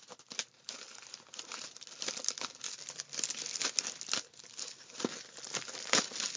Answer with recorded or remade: recorded